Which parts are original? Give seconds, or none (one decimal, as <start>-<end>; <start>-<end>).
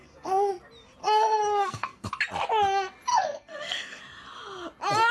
0.5-1.0; 2.1-3.1; 4.0-5.1